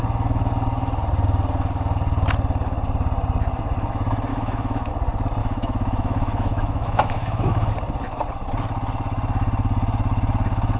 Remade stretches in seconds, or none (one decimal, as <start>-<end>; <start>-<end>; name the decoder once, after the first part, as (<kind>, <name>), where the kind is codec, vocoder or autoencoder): 4.3-4.9 (autoencoder, DAC-VAE); 5.4-7.7